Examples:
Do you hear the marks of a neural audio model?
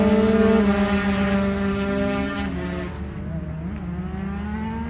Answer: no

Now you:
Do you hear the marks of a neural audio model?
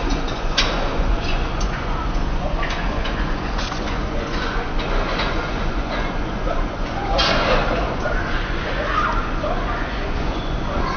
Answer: yes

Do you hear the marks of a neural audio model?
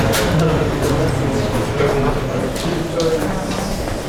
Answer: no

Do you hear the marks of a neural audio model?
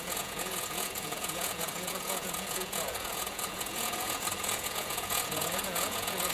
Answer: yes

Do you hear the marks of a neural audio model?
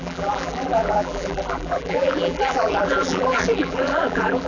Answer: yes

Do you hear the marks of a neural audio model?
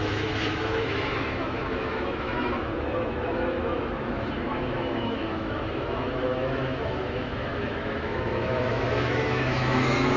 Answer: yes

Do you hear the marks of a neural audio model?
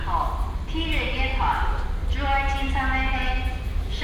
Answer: no